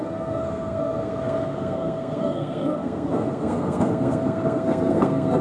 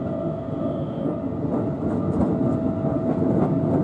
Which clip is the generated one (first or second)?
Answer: first